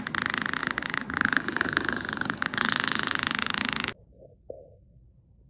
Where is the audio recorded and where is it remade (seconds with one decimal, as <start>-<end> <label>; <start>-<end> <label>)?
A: 0.0-0.6 recorded; 0.6-3.9 remade; 3.9-5.5 recorded